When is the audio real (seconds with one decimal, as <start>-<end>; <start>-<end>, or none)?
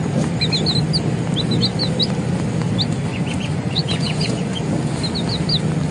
0.0-3.1; 4.6-5.9